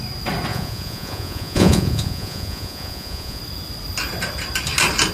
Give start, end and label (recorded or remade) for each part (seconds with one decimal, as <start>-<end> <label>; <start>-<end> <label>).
0.0-0.5 recorded; 0.5-3.4 remade; 3.4-5.1 recorded